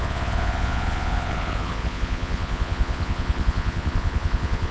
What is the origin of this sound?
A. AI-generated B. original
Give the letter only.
A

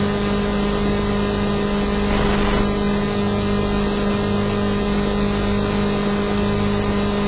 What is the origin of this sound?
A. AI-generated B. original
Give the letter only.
B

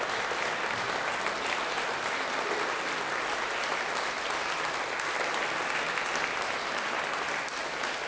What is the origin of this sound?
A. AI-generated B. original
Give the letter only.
B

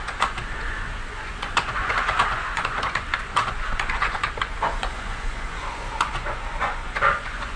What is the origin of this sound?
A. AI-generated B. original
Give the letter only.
A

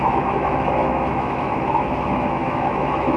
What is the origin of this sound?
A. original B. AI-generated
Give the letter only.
B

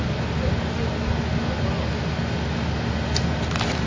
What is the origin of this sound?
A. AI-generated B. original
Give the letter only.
B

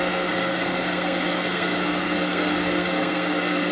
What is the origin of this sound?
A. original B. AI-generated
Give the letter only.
B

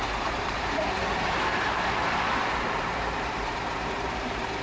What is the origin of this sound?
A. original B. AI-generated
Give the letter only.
B